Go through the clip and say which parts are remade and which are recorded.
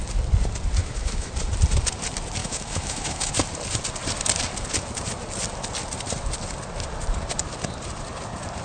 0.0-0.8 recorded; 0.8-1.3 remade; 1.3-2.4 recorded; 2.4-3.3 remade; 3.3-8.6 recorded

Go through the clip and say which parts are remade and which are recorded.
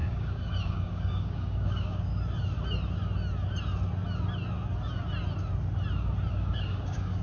0.0-2.1 remade; 2.1-6.3 recorded; 6.3-7.2 remade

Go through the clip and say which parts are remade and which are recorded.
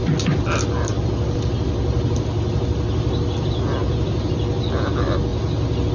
0.0-3.8 recorded; 3.8-4.3 remade; 4.3-5.9 recorded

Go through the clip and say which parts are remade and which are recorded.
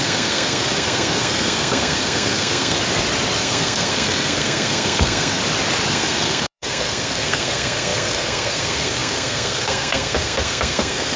0.0-2.8 remade; 2.8-3.4 recorded; 3.4-5.4 remade; 5.4-5.9 recorded; 5.9-11.2 remade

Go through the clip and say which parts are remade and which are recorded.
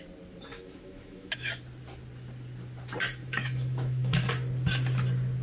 0.0-0.5 recorded; 0.5-1.5 remade; 1.5-3.2 recorded; 3.2-4.3 remade; 4.3-5.4 recorded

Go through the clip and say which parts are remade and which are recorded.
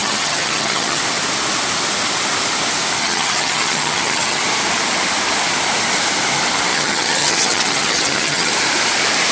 0.0-1.0 remade; 1.0-3.0 recorded; 3.0-4.4 remade; 4.4-6.7 recorded; 6.7-8.5 remade; 8.5-9.3 recorded